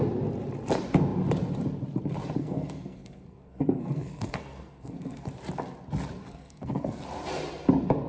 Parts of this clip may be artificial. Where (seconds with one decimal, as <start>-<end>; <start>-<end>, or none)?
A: 2.4-5.3; 6.2-7.0